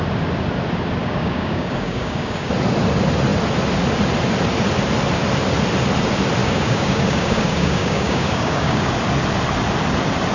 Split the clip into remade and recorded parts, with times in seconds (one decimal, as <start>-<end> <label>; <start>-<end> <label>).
0.0-1.0 recorded; 1.0-2.5 remade; 2.5-6.4 recorded; 6.4-8.9 remade; 8.9-10.3 recorded